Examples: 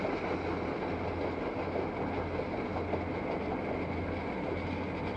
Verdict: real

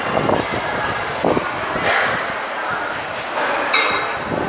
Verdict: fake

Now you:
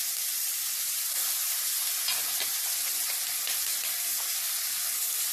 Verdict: real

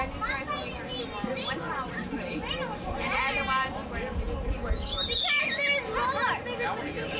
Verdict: real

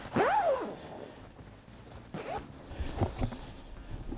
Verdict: real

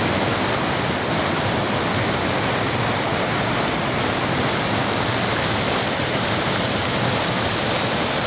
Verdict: real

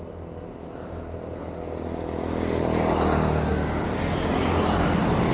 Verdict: real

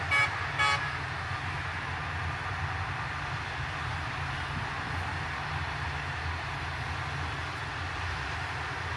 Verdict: real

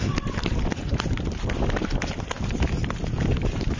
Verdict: real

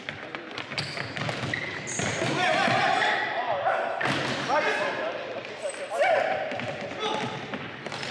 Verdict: real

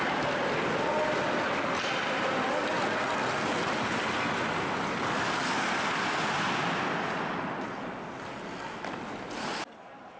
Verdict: real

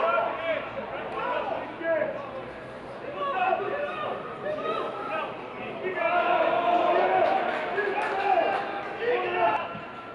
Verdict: real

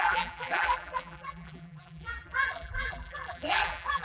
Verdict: fake